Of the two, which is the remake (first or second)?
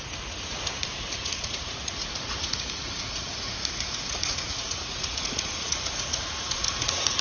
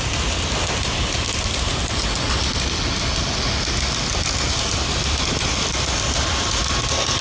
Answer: first